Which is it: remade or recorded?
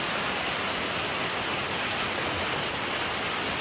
recorded